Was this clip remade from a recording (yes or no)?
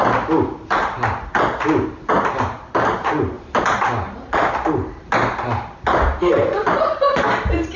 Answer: no